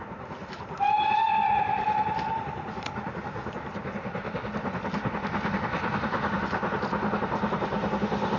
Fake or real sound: real